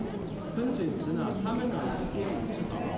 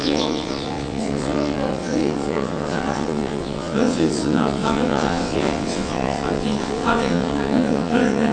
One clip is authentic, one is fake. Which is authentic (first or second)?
first